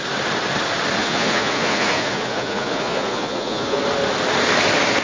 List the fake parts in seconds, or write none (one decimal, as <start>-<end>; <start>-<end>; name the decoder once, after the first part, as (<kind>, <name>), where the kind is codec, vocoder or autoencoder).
1.0-3.8 (vocoder, Vocos)